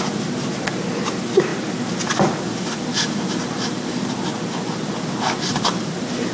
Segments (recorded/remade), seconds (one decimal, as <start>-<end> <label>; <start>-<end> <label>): 0.0-6.3 recorded